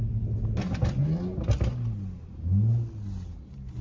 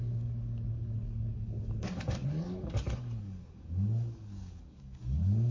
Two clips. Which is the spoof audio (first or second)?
second